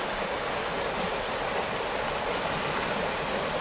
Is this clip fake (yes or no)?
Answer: no